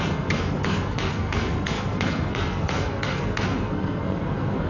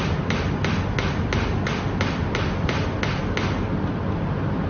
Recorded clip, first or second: second